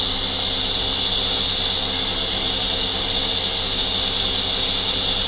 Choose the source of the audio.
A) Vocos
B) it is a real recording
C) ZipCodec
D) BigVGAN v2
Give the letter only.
B